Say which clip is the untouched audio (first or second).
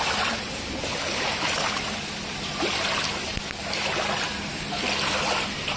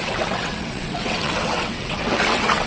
first